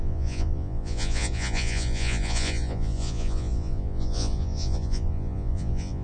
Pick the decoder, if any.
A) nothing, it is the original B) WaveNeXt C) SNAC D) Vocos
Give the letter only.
D